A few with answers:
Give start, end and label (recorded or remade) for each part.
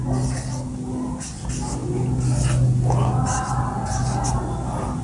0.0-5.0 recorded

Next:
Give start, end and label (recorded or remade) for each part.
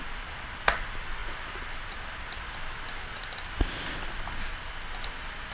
0.0-5.5 recorded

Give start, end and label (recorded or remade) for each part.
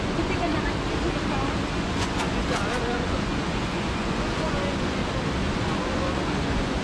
0.0-0.5 remade; 0.5-1.7 recorded; 1.7-5.0 remade; 5.0-5.5 recorded; 5.5-6.8 remade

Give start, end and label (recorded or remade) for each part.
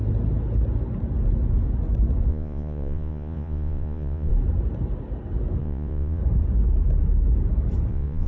0.0-2.3 recorded; 2.3-4.3 remade; 4.3-5.6 recorded; 5.6-6.2 remade; 6.2-7.9 recorded; 7.9-8.3 remade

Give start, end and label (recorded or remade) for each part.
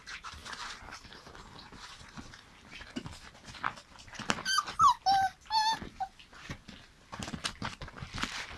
0.0-8.6 recorded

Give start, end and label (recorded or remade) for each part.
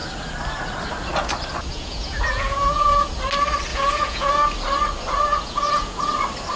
0.0-1.7 recorded; 1.7-3.1 remade; 3.1-3.7 recorded; 3.7-4.3 remade; 4.3-5.3 recorded; 5.3-6.0 remade; 6.0-6.6 recorded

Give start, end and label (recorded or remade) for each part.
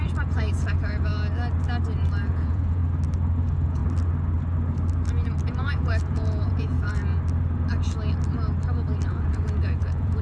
0.0-1.1 remade; 1.1-2.2 recorded; 2.2-2.8 remade; 2.8-3.4 recorded; 3.4-3.8 remade; 3.8-5.5 recorded; 5.5-7.0 remade; 7.0-9.1 recorded; 9.1-10.2 remade